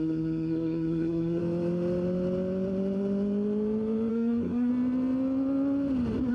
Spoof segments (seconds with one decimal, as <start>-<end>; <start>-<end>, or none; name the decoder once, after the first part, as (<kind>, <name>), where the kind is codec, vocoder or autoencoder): 0.0-1.4 (codec, SNAC); 4.1-4.7